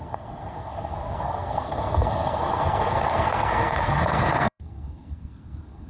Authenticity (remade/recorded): remade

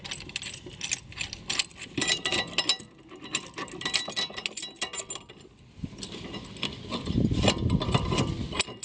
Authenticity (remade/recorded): recorded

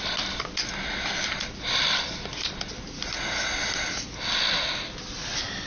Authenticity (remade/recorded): recorded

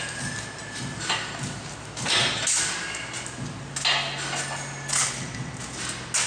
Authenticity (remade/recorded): recorded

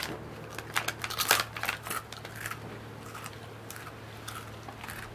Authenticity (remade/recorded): recorded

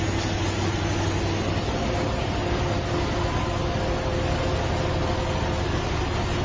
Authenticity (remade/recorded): recorded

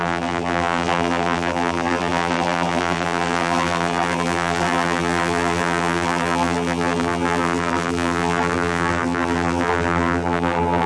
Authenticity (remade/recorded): remade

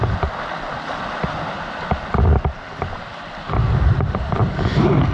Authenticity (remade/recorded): recorded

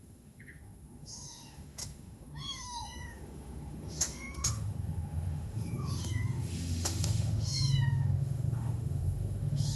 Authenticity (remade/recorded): remade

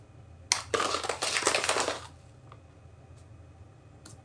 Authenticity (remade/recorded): recorded